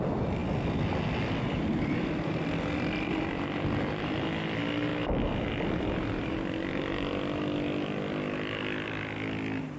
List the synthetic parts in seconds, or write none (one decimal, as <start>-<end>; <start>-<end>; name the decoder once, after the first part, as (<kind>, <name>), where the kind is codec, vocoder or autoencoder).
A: none